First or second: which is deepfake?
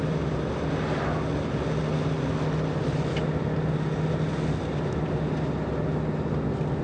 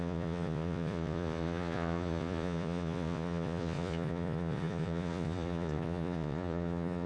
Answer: second